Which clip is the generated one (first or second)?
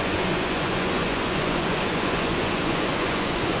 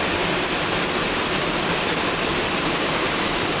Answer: first